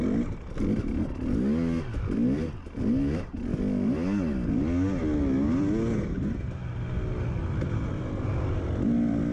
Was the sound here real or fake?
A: real